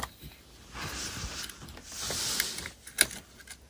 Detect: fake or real real